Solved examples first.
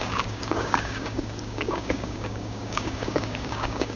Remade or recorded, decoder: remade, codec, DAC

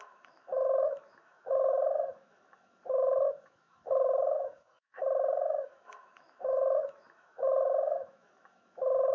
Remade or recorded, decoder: remade, autoencoder, DAC-VAE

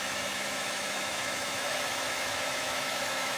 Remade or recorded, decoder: remade, autoencoder, DAC-VAE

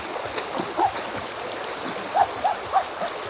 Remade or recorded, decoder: recorded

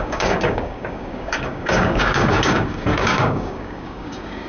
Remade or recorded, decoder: remade, codec, DAC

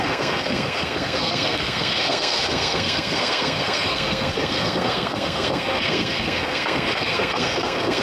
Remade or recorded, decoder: remade, codec, SNAC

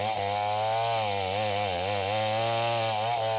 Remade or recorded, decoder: recorded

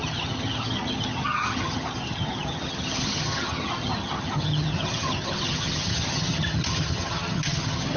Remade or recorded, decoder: remade, vocoder, HiFi-GAN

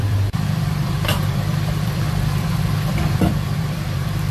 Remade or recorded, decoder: remade, vocoder, BigVGAN v2